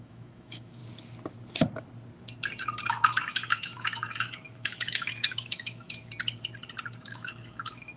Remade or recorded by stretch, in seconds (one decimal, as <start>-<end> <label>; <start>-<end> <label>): 0.0-0.8 remade; 0.8-2.9 recorded; 2.9-6.0 remade; 6.0-7.0 recorded; 7.0-8.0 remade